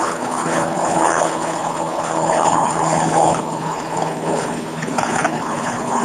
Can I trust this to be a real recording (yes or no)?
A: no